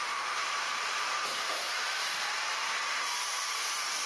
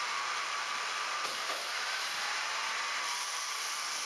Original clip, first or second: second